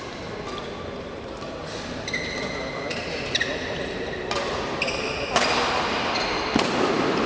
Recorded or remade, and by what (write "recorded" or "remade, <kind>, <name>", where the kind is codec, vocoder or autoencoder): recorded